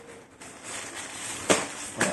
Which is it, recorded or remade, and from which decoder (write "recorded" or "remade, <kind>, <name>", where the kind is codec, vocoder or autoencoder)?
recorded